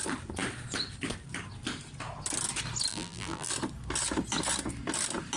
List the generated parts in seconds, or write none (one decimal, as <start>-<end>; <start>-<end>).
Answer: 2.9-3.5